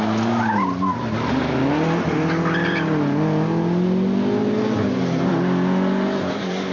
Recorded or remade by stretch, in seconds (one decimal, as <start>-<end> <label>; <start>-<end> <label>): 0.0-6.7 recorded